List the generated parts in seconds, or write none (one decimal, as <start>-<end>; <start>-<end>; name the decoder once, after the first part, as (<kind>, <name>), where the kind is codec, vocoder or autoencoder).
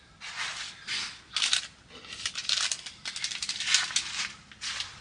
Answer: none